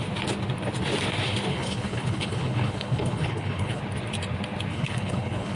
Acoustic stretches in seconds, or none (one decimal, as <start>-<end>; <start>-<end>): 0.0-1.5; 3.8-4.7